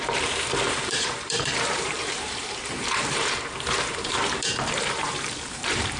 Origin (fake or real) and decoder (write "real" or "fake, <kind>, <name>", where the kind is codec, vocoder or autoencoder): fake, vocoder, BigVGAN v2